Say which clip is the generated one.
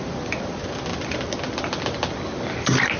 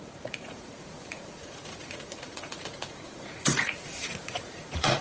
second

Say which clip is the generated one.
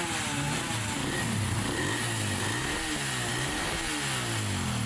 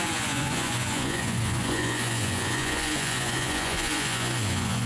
second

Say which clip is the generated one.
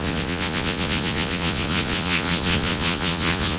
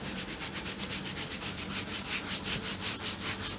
first